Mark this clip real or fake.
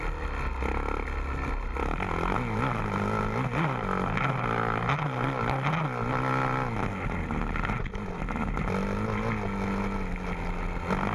real